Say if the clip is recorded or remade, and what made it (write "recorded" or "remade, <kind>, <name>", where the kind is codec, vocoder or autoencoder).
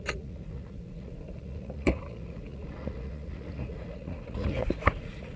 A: remade, vocoder, Vocos